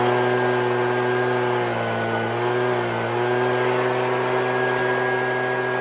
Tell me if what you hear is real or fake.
real